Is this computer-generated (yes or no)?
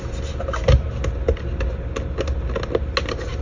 no